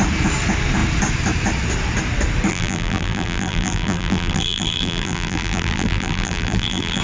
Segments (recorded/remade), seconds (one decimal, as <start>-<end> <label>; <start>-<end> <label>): 0.0-2.5 recorded; 2.5-7.0 remade